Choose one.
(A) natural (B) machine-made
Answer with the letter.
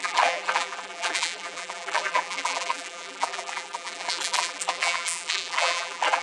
B